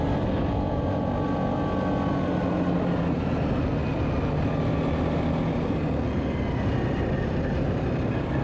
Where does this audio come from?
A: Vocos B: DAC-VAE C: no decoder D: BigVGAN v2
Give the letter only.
C